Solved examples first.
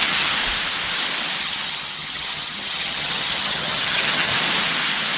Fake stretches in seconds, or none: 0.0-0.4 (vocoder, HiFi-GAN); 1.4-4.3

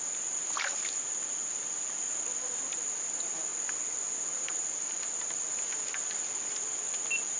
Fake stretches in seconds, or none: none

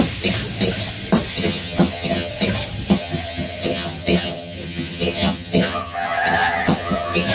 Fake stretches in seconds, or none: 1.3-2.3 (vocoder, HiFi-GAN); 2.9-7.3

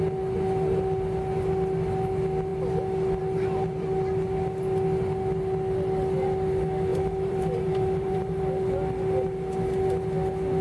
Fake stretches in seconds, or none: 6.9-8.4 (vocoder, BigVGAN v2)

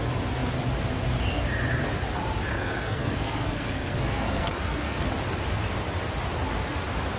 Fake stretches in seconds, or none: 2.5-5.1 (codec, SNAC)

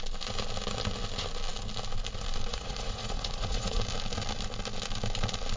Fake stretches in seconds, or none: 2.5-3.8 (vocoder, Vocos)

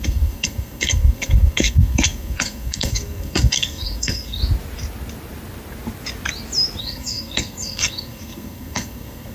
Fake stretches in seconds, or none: 0.0-4.4 (codec, SNAC); 6.8-9.3

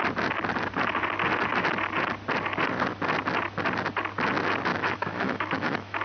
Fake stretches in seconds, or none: 4.7-6.0 (autoencoder, DAC-VAE)